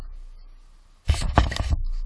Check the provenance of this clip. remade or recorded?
recorded